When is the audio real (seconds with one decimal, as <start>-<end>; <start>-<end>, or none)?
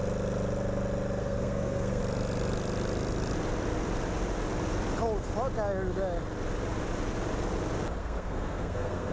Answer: 0.0-1.2; 2.0-8.0